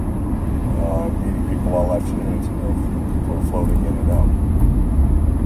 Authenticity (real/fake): real